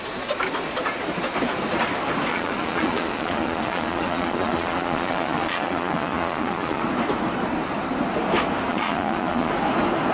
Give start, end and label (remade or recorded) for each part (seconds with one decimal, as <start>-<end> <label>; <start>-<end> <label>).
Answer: 0.0-2.3 recorded; 2.3-6.8 remade; 6.8-8.7 recorded; 8.7-9.5 remade; 9.5-10.1 recorded